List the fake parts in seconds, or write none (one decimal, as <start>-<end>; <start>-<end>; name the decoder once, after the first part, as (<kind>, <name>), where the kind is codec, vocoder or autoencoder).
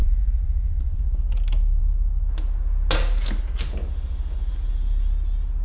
0.0-1.0 (vocoder, BigVGAN v2)